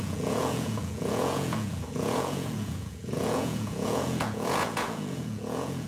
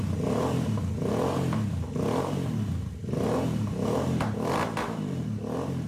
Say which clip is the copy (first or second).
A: first